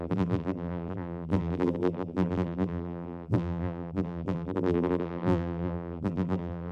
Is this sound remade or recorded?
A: remade